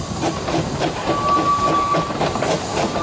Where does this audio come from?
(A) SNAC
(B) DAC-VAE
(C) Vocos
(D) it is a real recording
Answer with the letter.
D